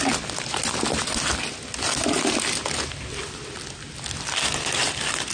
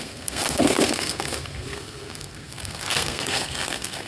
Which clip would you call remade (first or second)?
second